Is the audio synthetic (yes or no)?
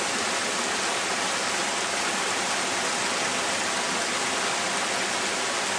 no